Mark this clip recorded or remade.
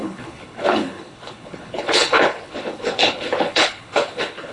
remade